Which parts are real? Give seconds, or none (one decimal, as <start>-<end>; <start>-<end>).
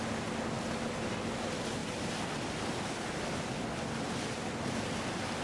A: 0.0-5.4